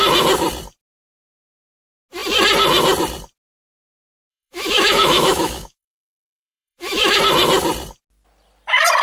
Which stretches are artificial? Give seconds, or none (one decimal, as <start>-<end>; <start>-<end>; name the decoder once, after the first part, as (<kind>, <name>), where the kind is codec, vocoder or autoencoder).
4.3-7.2 (autoencoder, DAC-VAE)